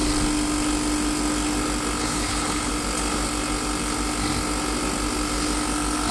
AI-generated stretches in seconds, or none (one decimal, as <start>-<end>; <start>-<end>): 2.0-2.7